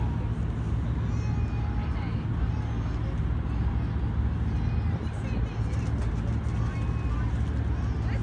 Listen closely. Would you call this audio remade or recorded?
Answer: recorded